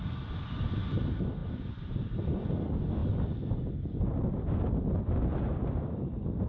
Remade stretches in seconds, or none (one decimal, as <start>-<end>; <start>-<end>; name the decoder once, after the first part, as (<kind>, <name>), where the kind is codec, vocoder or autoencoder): 1.4-2.4 (vocoder, BigVGAN v2)